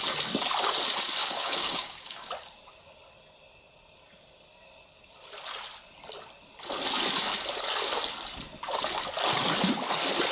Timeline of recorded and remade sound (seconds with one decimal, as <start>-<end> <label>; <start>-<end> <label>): 0.0-1.2 recorded; 1.2-2.3 remade; 2.3-10.3 recorded